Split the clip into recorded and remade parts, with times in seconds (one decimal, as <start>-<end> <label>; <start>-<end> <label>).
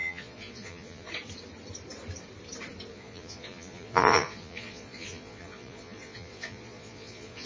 0.0-1.1 remade; 1.1-2.9 recorded; 2.9-7.5 remade